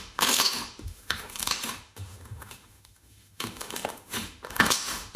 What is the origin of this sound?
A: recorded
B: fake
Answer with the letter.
B